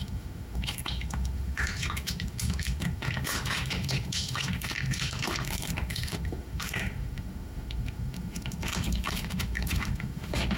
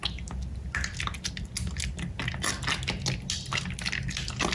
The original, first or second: second